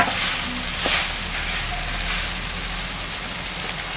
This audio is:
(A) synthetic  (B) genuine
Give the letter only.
B